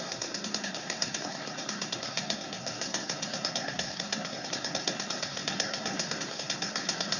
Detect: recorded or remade remade